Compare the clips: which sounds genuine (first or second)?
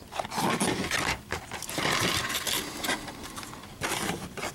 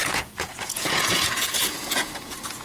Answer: first